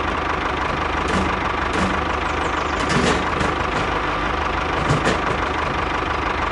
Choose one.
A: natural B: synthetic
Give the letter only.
A